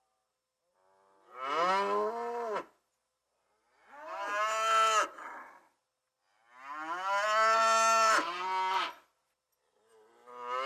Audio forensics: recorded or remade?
recorded